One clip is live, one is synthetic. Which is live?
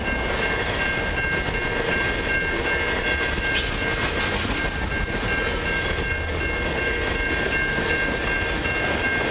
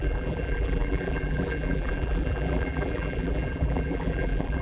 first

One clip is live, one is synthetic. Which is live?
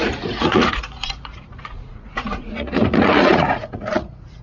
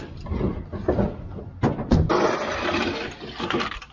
second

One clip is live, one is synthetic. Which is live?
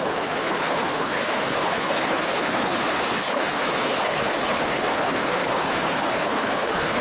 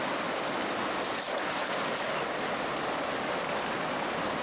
second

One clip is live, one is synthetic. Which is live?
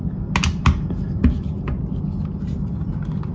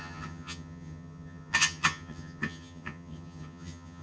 first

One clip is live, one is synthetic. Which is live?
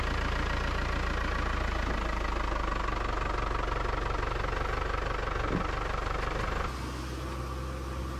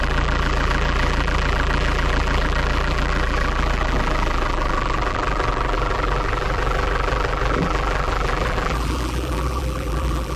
first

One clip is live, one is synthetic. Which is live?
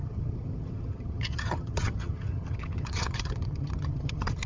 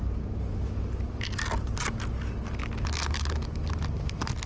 second